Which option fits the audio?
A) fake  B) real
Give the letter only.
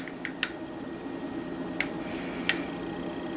B